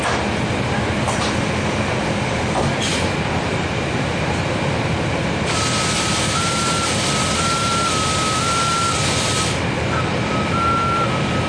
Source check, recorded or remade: recorded